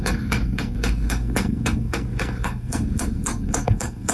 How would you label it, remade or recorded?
remade